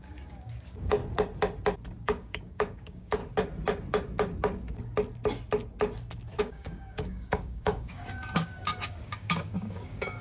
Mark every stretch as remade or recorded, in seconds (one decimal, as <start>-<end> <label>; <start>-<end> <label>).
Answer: 0.0-1.0 remade; 1.0-2.0 recorded; 2.0-3.2 remade; 3.2-6.4 recorded; 6.4-10.2 remade